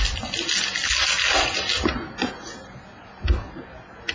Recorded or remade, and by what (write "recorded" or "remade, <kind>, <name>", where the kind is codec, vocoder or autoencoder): recorded